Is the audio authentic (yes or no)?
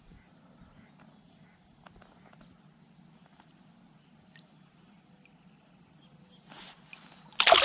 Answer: yes